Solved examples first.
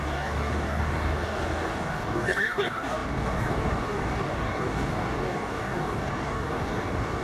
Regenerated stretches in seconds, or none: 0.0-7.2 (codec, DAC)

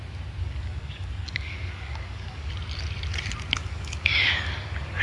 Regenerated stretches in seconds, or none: 0.4-2.5 (codec, DAC); 3.6-5.0

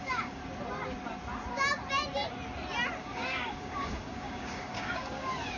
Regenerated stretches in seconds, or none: 0.0-0.4 (codec, DAC); 3.0-5.6

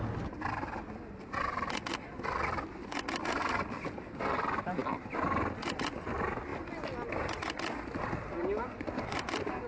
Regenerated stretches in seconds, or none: none

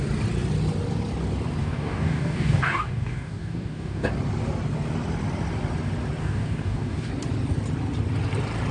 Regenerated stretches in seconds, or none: 1.6-4.1 (codec, DAC); 6.2-7.1